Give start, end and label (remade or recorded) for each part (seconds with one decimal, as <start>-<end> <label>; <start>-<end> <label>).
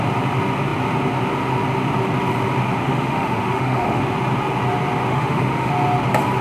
0.0-2.8 recorded; 2.8-4.0 remade; 4.0-5.1 recorded; 5.1-5.7 remade; 5.7-6.4 recorded